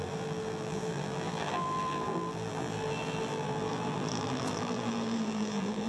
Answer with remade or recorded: remade